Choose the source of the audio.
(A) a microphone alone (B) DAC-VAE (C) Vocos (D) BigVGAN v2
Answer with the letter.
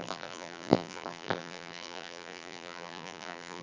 D